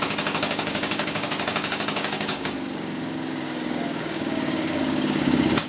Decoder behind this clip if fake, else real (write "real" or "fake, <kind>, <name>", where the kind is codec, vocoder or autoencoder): fake, codec, DAC